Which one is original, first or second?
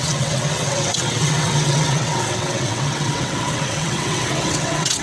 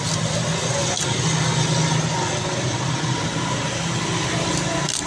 second